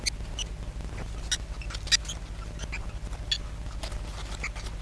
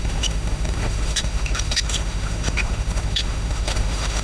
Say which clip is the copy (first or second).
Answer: second